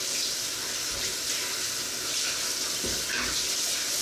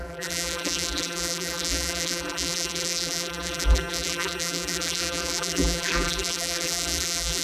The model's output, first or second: second